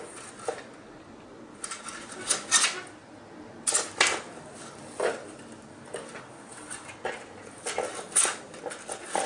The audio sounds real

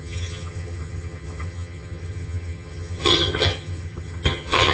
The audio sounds fake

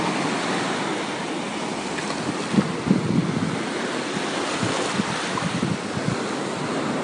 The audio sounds real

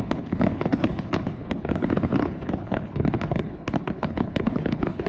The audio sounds fake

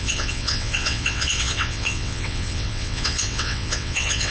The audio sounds fake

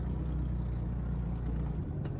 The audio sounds real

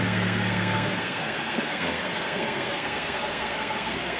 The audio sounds fake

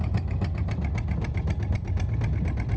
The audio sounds real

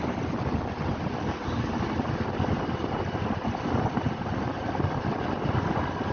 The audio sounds real